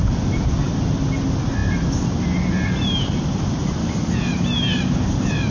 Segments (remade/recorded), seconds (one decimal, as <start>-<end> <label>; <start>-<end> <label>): 0.0-5.5 recorded